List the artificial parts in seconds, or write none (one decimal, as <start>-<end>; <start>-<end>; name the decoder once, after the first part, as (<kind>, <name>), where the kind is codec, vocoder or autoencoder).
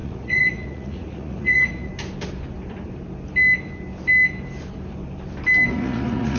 0.0-1.9 (vocoder, Vocos); 5.7-6.4